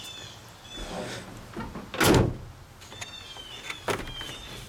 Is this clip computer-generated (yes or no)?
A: no